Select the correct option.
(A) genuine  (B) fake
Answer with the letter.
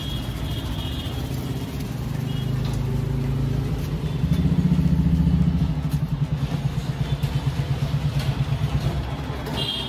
A